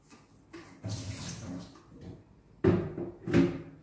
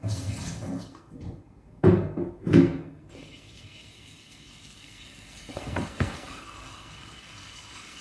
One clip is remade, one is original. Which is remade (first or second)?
second